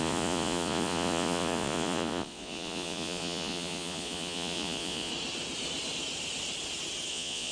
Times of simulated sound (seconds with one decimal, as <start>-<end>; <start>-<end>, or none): 0.0-5.1; 7.1-7.5